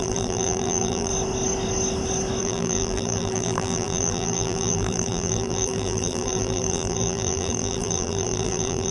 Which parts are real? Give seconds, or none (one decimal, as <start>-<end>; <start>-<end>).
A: 1.1-2.4